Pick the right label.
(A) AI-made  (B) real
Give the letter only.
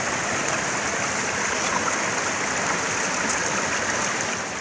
B